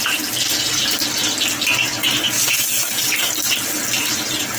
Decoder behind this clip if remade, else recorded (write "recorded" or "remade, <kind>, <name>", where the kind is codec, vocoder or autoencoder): recorded